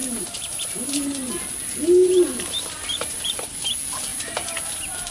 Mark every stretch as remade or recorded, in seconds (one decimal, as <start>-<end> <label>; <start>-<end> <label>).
0.0-1.3 remade; 1.3-2.0 recorded; 2.0-3.5 remade; 3.5-4.1 recorded; 4.1-5.1 remade